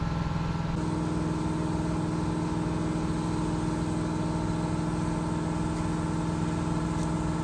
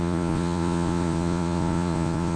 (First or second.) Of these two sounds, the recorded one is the first